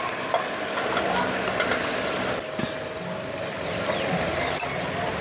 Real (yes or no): yes